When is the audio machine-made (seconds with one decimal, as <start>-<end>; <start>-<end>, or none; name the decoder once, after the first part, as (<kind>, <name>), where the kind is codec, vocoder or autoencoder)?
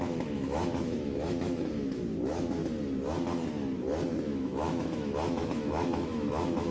0.0-2.6 (autoencoder, DAC-VAE); 4.2-6.7